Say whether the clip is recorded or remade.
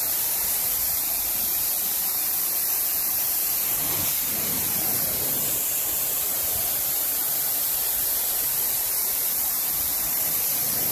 remade